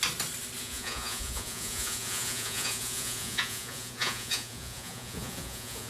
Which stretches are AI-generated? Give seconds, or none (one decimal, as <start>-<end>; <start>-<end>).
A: 0.6-5.9